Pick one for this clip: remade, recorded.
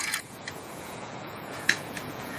remade